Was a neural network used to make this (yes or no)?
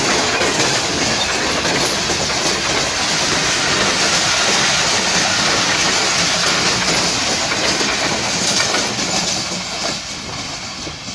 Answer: no